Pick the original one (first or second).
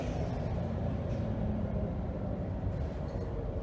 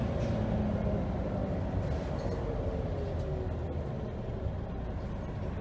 second